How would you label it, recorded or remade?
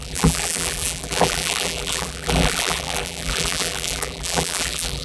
remade